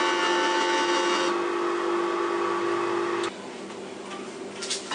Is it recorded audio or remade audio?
recorded